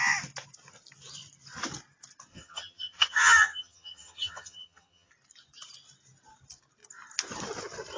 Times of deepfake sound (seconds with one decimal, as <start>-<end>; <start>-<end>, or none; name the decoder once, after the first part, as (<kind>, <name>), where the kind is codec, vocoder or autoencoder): 2.3-5.1 (vocoder, HiFi-GAN)